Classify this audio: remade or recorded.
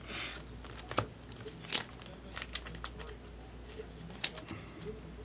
recorded